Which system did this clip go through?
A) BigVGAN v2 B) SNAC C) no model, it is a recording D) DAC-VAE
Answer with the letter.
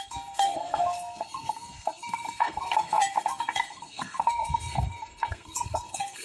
B